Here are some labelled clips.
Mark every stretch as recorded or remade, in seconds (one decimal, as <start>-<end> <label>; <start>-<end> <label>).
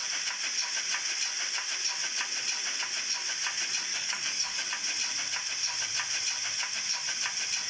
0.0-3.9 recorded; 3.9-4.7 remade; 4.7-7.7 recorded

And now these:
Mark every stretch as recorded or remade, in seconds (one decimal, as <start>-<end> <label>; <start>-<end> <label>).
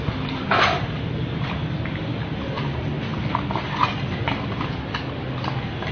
0.0-5.9 recorded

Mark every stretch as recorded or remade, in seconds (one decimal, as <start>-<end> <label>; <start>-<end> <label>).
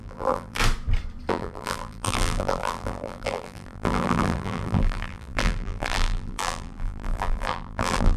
0.0-0.6 remade; 0.6-1.3 recorded; 1.3-8.2 remade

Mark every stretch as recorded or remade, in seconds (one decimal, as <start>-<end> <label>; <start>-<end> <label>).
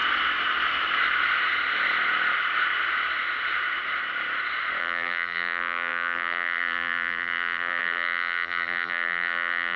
0.0-4.8 recorded; 4.8-9.8 remade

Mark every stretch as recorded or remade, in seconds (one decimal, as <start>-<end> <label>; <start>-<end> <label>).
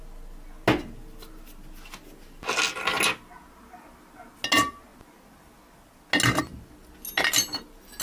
0.0-8.0 recorded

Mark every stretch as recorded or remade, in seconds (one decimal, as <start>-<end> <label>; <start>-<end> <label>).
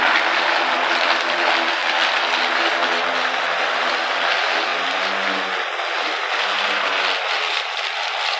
0.0-8.4 recorded